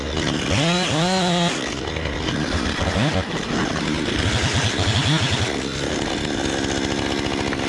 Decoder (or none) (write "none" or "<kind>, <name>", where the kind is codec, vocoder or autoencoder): none